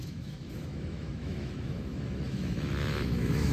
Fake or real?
fake